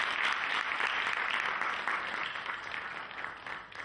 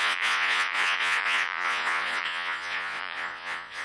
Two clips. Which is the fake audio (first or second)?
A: second